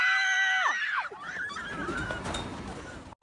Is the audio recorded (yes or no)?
yes